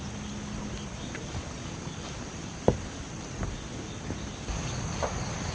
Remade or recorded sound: recorded